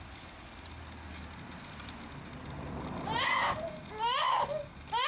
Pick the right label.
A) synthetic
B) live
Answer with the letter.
B